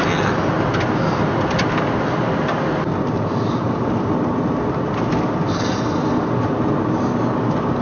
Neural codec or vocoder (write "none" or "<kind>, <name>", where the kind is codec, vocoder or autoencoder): none